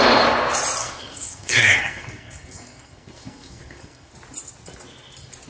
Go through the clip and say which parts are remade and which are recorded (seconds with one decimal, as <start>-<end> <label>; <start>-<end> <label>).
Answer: 0.0-0.8 recorded; 0.8-4.1 remade; 4.1-5.5 recorded